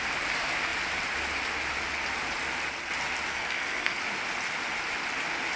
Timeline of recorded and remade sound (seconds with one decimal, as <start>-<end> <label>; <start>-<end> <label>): 0.0-3.3 recorded; 3.3-4.0 remade; 4.0-5.6 recorded